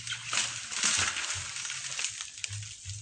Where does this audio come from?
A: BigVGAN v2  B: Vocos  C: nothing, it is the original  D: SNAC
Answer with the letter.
C